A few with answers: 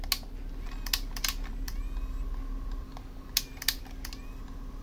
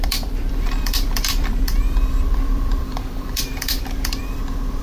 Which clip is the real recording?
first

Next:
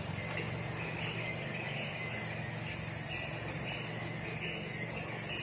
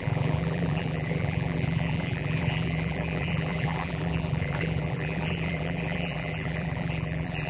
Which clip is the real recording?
first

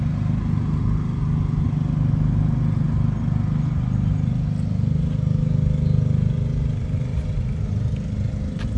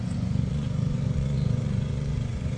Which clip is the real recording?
first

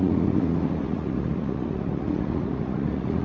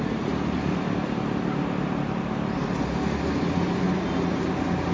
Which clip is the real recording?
second